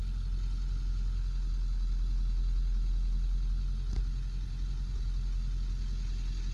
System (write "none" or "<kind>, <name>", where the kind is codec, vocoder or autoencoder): none